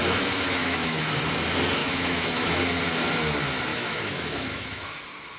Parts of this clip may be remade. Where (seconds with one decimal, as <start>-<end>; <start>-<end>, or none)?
0.6-1.1; 1.8-2.6; 3.7-5.0